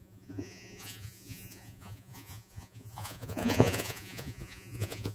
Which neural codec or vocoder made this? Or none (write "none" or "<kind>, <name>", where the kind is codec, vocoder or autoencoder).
vocoder, Vocos